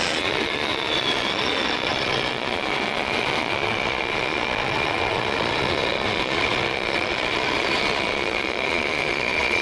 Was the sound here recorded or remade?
remade